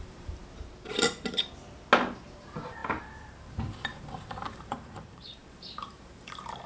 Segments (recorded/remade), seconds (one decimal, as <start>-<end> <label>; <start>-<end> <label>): 0.0-0.4 remade; 0.4-2.4 recorded; 2.4-6.7 remade